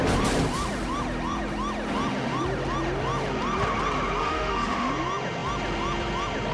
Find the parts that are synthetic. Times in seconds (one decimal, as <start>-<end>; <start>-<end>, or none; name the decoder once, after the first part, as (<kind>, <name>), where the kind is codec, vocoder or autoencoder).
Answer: 4.2-4.9 (autoencoder, DAC-VAE)

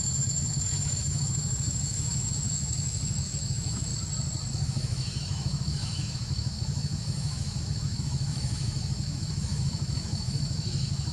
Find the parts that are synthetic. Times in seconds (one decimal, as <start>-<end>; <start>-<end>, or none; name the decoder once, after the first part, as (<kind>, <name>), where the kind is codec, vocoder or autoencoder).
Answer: 0.0-3.9 (autoencoder, DAC-VAE); 4.5-11.1

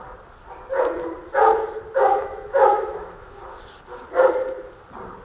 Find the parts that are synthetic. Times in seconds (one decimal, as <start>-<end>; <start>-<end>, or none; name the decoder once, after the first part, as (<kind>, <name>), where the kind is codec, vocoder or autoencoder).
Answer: 2.1-3.6 (autoencoder, DAC-VAE)

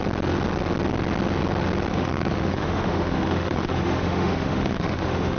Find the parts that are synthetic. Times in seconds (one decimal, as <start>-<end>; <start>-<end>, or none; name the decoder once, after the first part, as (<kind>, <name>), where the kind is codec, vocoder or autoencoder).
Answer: 1.9-5.4 (autoencoder, DAC-VAE)

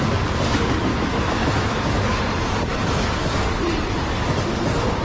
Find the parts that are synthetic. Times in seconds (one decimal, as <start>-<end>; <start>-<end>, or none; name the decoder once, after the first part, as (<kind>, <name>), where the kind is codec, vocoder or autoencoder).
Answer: 0.9-2.2 (autoencoder, DAC-VAE)

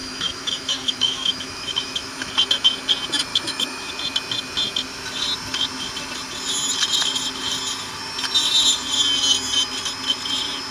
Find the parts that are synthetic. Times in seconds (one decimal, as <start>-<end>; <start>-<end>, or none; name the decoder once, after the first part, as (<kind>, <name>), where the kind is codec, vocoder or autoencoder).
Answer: 0.0-2.3 (autoencoder, DAC-VAE); 3.3-3.9

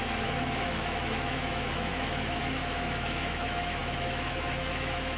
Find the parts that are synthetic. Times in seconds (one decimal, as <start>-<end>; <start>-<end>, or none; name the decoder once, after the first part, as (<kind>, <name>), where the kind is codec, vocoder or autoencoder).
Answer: 0.0-5.2 (autoencoder, DAC-VAE)